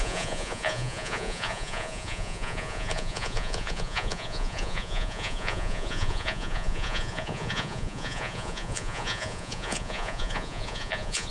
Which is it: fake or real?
fake